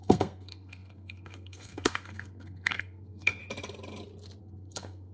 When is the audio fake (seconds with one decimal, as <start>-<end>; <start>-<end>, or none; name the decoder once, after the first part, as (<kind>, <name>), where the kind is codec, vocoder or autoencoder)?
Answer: 0.0-3.4 (codec, SNAC); 4.4-5.1